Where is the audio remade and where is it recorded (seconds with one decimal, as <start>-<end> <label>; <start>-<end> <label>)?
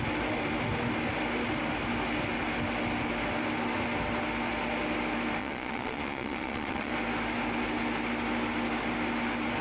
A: 0.0-5.4 recorded; 5.4-6.9 remade; 6.9-9.6 recorded